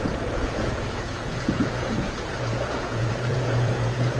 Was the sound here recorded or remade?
remade